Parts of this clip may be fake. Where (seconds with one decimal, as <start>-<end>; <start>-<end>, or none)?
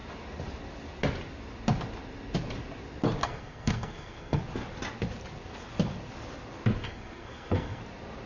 3.2-4.4; 6.8-7.8